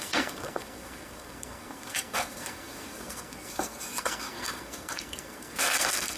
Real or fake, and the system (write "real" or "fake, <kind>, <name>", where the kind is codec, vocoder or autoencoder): fake, codec, SNAC